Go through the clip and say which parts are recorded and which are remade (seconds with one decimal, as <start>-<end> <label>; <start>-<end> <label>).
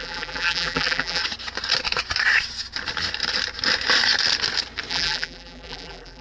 0.0-1.2 remade; 1.2-4.9 recorded; 4.9-6.2 remade